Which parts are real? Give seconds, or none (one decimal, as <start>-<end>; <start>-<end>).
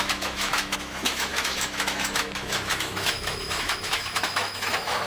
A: none